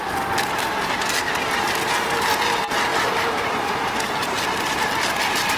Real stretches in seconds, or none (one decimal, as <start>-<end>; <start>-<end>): 0.0-2.9; 3.5-5.6